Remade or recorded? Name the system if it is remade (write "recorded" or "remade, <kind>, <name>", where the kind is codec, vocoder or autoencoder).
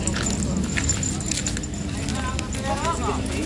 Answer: recorded